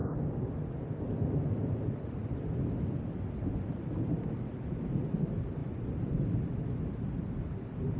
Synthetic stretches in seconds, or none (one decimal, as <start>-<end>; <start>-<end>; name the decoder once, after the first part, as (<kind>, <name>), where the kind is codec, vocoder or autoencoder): none